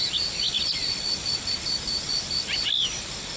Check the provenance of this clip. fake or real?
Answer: real